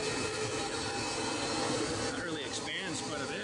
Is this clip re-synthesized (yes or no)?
no